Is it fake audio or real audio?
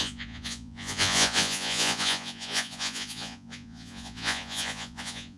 fake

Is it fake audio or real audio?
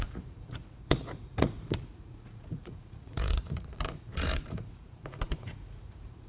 fake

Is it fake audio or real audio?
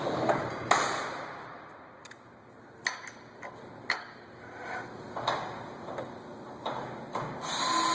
real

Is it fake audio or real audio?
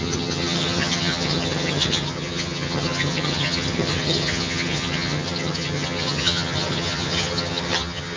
fake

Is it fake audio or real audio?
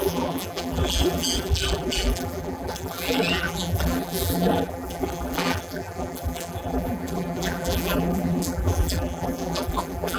fake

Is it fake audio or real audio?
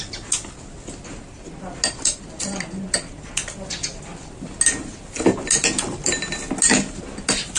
real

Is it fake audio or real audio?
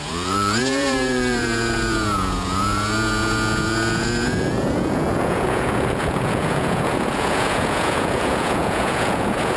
fake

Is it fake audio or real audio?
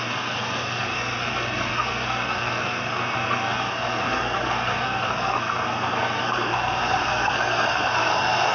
fake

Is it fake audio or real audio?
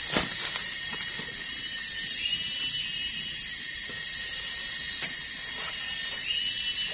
real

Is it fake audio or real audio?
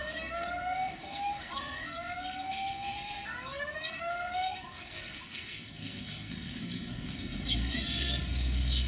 fake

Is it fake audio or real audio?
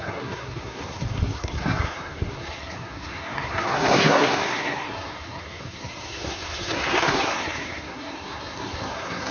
fake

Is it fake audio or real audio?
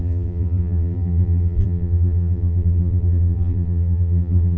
fake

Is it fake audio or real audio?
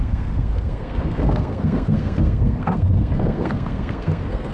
fake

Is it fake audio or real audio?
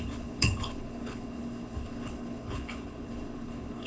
fake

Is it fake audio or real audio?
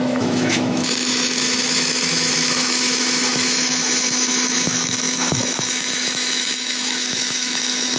fake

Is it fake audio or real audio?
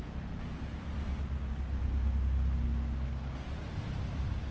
real